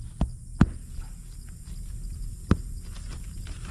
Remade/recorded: recorded